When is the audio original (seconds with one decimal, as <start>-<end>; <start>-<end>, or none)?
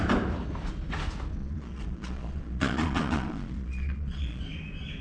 0.0-1.4; 4.4-5.0